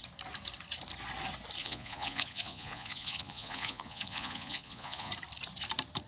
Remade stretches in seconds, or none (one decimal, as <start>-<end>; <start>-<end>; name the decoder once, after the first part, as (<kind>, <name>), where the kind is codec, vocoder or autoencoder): 1.6-5.1 (vocoder, Vocos)